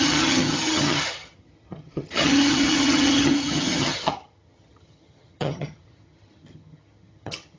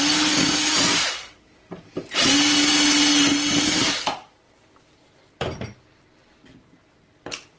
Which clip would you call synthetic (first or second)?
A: first